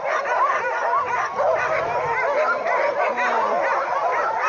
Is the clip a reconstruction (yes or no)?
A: no